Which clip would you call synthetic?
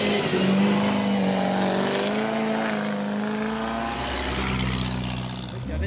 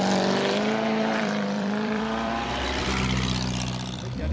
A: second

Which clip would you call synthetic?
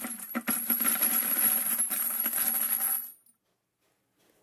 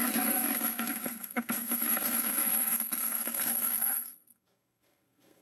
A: second